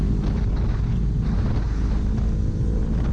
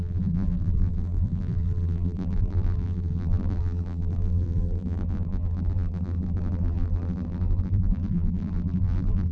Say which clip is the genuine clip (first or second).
first